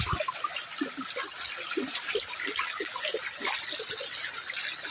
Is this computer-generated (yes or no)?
no